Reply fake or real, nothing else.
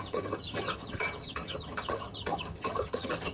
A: fake